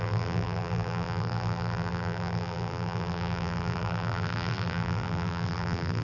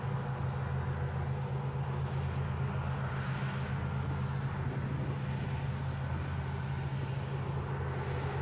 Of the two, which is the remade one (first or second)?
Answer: first